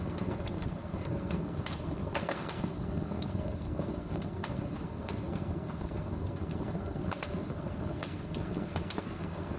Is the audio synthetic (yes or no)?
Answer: yes